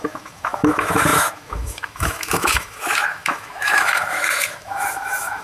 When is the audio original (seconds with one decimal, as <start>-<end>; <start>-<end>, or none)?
none